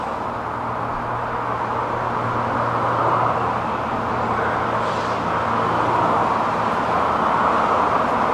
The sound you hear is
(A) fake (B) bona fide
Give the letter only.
B